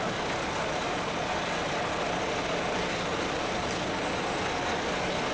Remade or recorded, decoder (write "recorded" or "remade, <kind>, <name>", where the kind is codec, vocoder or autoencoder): recorded